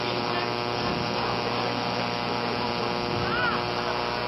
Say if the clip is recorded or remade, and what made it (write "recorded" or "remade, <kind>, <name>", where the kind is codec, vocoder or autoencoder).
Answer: recorded